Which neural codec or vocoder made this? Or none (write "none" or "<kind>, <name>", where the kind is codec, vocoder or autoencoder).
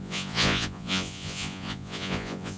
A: vocoder, Vocos